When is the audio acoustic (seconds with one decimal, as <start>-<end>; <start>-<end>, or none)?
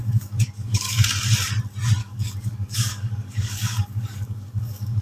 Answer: 1.1-2.0